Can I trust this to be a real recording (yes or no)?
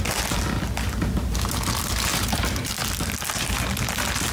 yes